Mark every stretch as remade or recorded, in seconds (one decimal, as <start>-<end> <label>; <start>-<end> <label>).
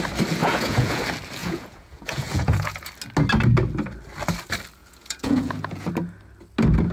0.0-0.4 recorded; 0.4-1.0 remade; 1.0-1.4 recorded; 1.4-2.9 remade; 2.9-4.8 recorded; 4.8-5.9 remade; 5.9-6.9 recorded